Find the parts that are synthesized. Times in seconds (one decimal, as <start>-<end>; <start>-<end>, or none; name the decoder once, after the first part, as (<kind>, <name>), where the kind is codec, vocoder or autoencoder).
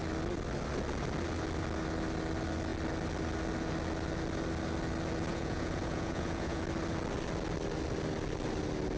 5.3-6.6 (vocoder, Vocos)